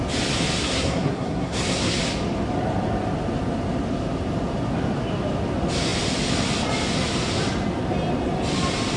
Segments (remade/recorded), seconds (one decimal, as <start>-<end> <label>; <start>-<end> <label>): 0.0-0.6 recorded; 0.6-2.0 remade; 2.0-9.0 recorded